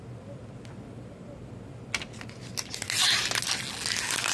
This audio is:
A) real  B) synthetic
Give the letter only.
A